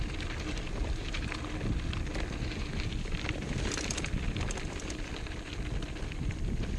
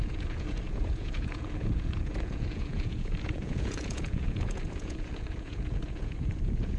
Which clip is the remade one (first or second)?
second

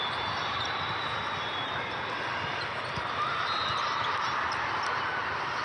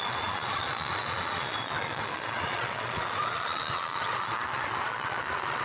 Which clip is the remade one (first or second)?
second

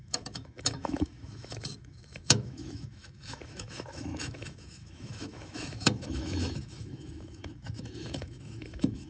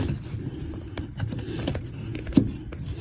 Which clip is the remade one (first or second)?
first